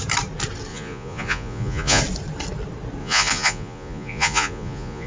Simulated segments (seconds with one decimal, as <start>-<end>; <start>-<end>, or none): 0.7-2.0; 3.0-5.1